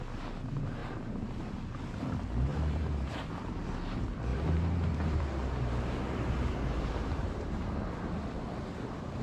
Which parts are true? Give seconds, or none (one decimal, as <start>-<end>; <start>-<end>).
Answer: 0.0-0.8; 1.4-2.5; 3.2-4.3; 5.2-9.2